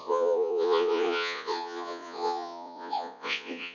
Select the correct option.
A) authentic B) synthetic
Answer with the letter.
B